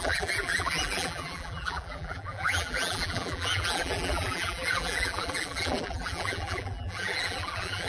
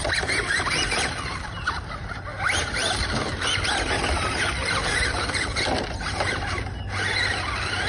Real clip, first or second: second